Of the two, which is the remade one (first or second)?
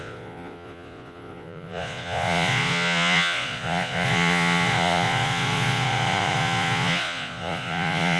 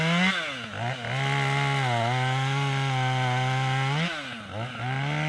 first